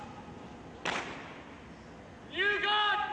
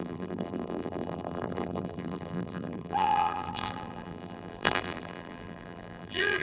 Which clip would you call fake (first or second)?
second